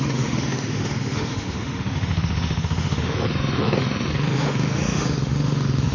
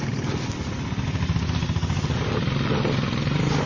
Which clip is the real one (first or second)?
second